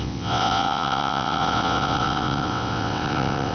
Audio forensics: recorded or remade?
remade